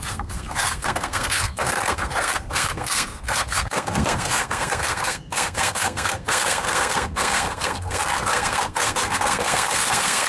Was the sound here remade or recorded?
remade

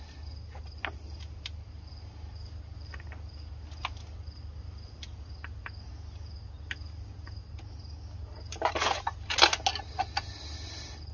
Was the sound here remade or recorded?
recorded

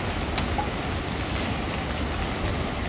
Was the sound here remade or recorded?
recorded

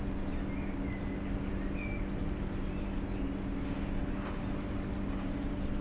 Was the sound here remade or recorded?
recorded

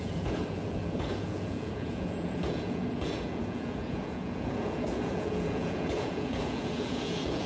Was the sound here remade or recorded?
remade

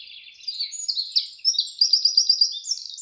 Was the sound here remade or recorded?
recorded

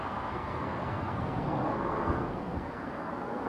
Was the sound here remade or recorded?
remade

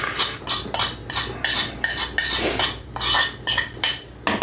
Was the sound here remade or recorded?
recorded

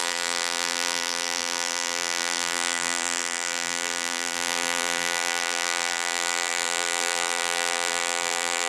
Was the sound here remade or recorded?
remade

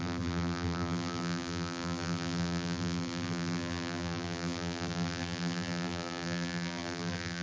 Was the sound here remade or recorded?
remade